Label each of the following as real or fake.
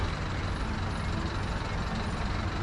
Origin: real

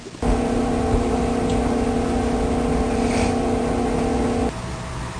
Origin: real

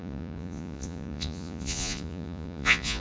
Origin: fake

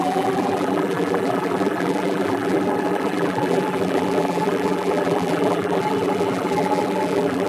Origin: fake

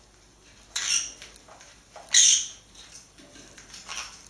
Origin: real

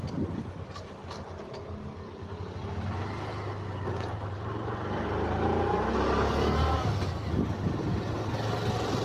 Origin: real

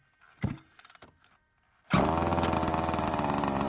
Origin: real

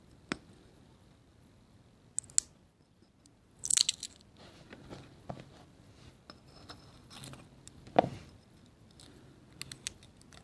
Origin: real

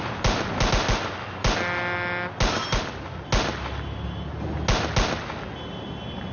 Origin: real